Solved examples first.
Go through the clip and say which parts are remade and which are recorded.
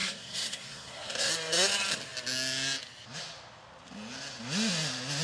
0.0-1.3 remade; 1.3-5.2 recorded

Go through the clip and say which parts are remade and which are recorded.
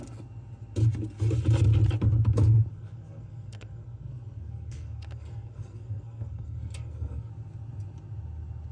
0.0-2.7 recorded; 2.7-7.3 remade; 7.3-8.7 recorded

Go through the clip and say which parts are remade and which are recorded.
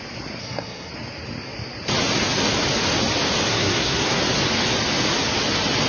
0.0-0.4 recorded; 0.4-0.9 remade; 0.9-3.5 recorded; 3.5-4.2 remade; 4.2-5.9 recorded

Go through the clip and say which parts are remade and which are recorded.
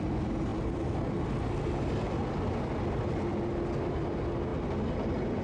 0.0-5.4 recorded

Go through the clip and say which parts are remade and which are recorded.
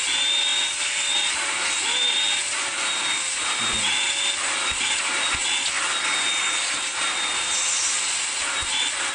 0.0-9.1 recorded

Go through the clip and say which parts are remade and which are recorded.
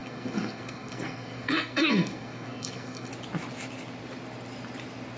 0.0-3.1 remade; 3.1-5.2 recorded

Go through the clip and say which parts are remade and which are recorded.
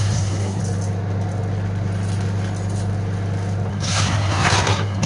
0.0-0.6 remade; 0.6-3.7 recorded; 3.7-5.1 remade